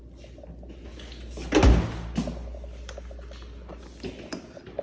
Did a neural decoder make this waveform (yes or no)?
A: no